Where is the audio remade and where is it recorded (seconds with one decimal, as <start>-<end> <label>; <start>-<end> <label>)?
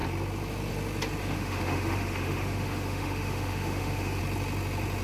0.0-1.2 recorded; 1.2-4.2 remade; 4.2-5.0 recorded